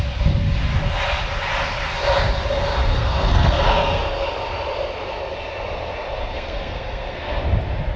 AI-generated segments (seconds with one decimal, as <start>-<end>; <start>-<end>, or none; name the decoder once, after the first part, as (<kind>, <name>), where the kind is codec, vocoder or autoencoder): 2.9-4.0 (codec, SNAC); 6.2-7.4